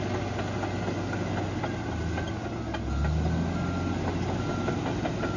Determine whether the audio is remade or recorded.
recorded